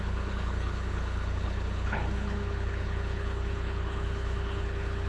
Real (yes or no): no